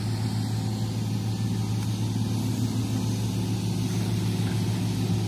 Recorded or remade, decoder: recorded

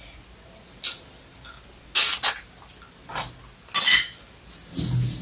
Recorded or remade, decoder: recorded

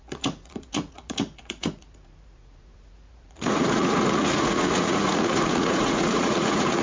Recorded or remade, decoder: remade, vocoder, Vocos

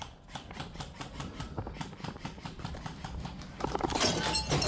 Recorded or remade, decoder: recorded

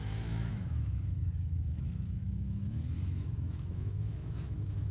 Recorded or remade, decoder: remade, autoencoder, DAC-VAE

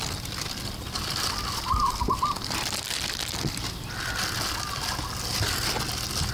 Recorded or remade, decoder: recorded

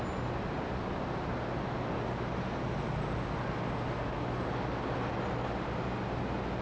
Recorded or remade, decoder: recorded